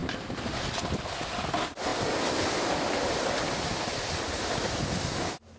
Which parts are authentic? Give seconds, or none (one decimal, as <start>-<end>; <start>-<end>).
0.0-5.6